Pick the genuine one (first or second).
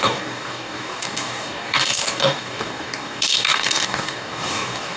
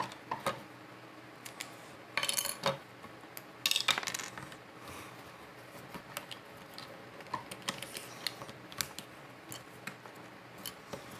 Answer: second